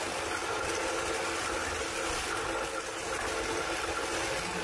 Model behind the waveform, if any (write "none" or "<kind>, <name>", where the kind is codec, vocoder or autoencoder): none